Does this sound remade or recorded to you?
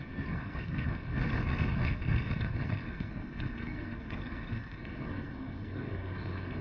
remade